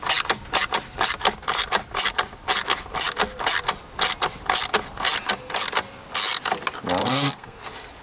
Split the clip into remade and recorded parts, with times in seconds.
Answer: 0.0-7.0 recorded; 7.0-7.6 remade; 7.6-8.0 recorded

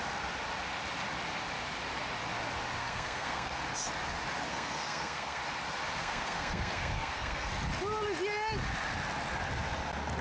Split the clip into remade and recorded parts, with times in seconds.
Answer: 0.0-2.8 recorded; 2.8-3.6 remade; 3.6-4.5 recorded; 4.5-5.4 remade; 5.4-6.0 recorded; 6.0-7.5 remade; 7.5-10.2 recorded